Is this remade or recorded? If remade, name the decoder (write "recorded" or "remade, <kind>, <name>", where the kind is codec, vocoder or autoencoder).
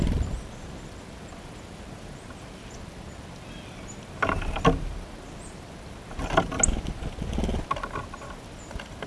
recorded